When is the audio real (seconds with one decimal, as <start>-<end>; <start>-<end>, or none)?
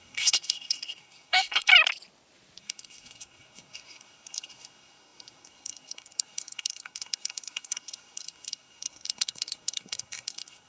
1.7-2.6